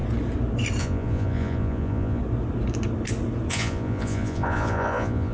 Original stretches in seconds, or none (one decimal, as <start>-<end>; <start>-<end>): 0.0-0.8; 2.2-3.5